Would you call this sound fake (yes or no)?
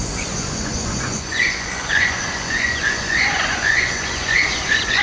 yes